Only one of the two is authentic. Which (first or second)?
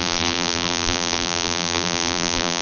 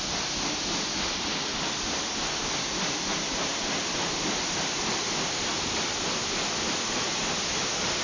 second